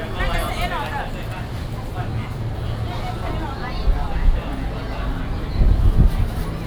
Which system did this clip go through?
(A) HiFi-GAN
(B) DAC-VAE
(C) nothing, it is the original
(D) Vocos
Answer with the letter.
C